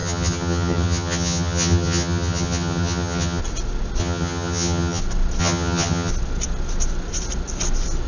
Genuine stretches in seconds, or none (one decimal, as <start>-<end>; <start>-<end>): 3.4-4.0; 5.0-5.4; 6.1-8.1